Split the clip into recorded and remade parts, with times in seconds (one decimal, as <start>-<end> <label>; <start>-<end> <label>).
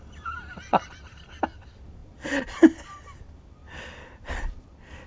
0.0-5.1 recorded